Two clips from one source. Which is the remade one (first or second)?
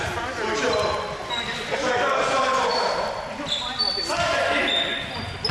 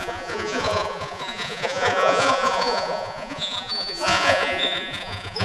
second